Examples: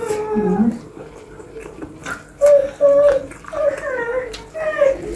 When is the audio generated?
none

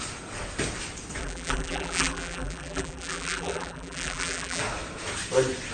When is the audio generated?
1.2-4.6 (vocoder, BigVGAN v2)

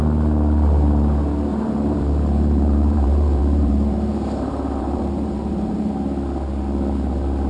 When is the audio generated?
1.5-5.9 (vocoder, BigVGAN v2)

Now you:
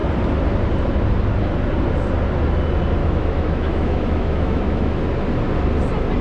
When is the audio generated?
3.0-5.0 (autoencoder, DAC-VAE)

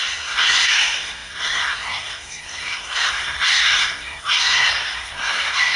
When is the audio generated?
0.0-5.8 (codec, SNAC)